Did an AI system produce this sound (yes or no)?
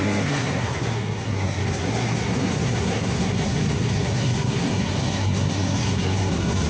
yes